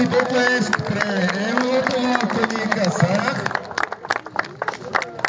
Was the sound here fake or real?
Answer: real